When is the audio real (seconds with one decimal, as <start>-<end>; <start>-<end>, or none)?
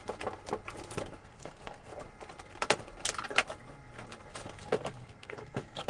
0.0-1.2; 1.9-4.6